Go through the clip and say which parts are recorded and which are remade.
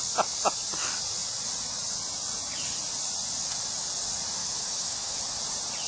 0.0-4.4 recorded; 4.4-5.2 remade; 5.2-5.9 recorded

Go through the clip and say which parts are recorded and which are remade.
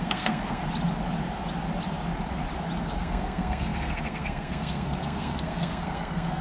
0.0-0.6 remade; 0.6-2.8 recorded; 2.8-6.4 remade